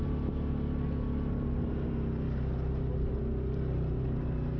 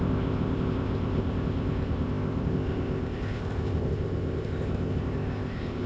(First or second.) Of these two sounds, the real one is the first